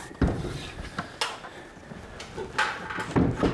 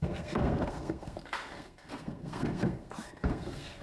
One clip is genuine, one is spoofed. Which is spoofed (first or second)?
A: second